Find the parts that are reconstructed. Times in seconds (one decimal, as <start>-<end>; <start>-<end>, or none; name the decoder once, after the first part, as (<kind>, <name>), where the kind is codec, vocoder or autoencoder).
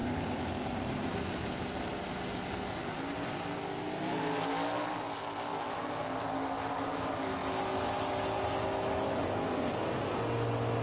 none